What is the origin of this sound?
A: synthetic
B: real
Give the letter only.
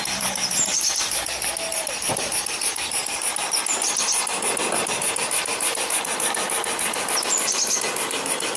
A